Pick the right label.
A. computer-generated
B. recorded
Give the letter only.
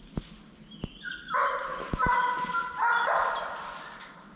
B